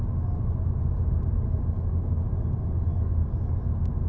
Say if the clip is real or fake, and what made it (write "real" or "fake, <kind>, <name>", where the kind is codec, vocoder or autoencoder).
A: real